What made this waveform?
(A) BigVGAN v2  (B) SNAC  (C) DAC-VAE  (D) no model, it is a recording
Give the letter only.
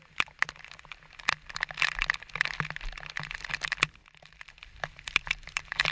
D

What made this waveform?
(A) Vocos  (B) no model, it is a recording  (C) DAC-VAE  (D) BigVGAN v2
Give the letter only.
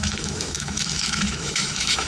C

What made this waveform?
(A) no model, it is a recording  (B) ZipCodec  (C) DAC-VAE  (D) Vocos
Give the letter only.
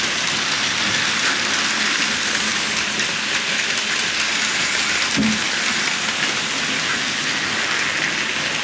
A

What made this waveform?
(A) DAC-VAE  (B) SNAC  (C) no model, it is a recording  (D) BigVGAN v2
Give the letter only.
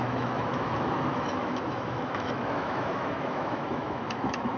A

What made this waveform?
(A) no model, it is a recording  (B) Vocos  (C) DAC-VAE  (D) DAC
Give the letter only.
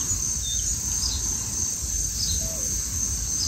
A